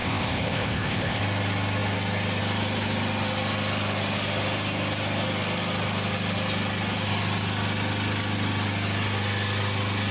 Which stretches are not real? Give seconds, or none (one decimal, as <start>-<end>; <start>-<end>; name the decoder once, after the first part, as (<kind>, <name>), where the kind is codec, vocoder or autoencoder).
0.0-1.2 (codec, ZipCodec)

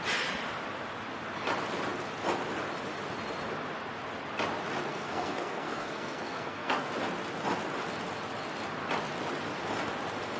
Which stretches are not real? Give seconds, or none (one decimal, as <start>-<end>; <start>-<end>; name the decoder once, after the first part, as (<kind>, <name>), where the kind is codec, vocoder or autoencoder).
4.9-6.9 (codec, SNAC)